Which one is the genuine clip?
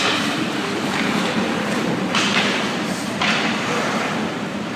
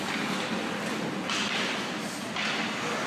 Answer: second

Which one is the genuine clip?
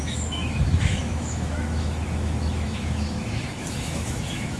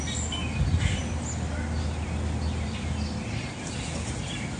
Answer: second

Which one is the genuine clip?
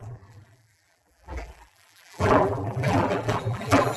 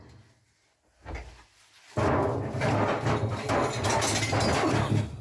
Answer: second